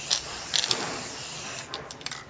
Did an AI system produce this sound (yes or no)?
no